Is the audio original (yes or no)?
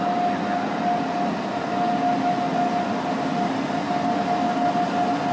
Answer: yes